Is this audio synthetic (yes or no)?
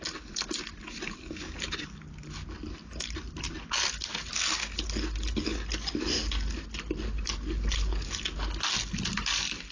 no